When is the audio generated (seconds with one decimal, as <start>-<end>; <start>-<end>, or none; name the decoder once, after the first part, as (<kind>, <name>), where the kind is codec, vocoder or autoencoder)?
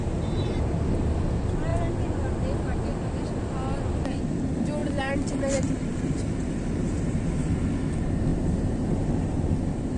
4.8-7.3 (vocoder, BigVGAN v2); 8.3-9.6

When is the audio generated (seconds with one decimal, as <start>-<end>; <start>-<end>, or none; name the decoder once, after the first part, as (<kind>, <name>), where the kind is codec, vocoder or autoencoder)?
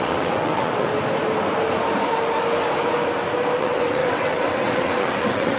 0.0-0.9 (vocoder, WaveNeXt); 3.6-5.6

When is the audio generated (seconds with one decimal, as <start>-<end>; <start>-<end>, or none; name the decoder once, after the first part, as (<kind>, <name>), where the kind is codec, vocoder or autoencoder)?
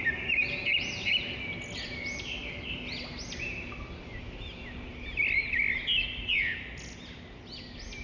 none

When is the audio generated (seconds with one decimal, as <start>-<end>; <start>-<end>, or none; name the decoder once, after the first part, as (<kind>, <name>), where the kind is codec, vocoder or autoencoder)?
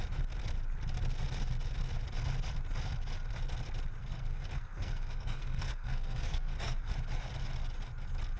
4.0-6.9 (codec, SNAC)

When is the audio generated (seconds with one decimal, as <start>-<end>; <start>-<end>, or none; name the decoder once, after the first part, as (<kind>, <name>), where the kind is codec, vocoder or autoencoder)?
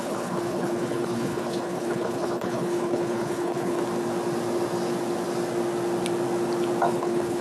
0.0-3.8 (codec, HILCodec); 6.9-7.4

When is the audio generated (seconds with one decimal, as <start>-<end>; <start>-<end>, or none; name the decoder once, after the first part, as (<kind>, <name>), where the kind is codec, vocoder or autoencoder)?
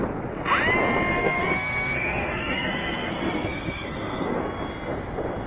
1.1-4.4 (codec, SNAC)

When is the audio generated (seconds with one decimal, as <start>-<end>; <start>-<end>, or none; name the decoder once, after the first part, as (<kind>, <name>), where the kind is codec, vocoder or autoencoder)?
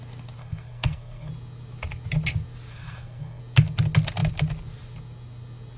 0.4-1.3 (codec, SNAC); 2.7-3.4